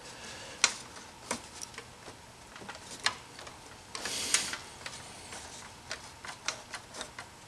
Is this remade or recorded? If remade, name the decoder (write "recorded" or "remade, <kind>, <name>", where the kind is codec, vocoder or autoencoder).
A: recorded